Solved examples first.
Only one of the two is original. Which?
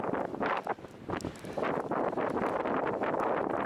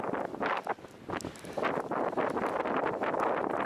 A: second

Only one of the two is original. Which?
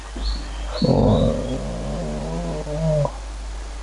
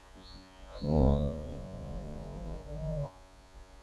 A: first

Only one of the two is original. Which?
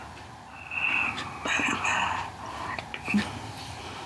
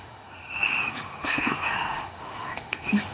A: first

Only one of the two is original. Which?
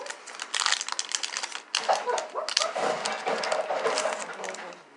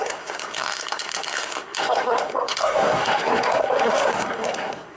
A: first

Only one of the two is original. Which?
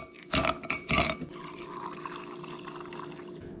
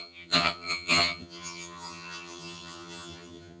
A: first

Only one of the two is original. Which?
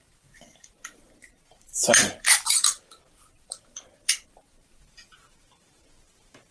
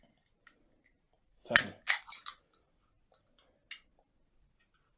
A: second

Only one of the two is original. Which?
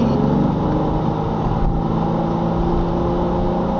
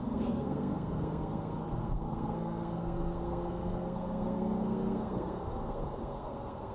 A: first